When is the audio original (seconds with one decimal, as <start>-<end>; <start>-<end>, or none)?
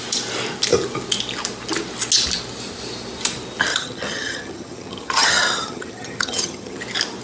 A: 0.0-3.7; 6.8-7.2